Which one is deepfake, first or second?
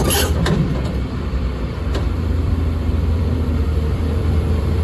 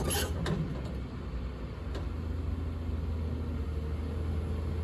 first